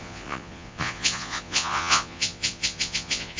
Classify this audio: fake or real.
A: fake